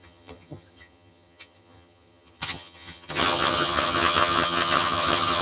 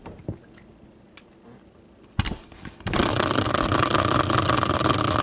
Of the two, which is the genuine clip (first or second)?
second